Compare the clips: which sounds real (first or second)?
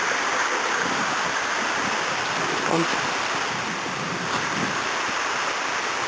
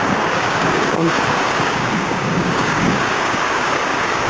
first